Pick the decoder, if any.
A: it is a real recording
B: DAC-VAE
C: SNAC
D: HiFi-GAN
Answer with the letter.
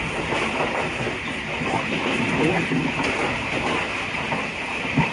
A